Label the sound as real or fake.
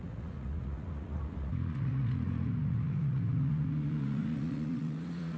fake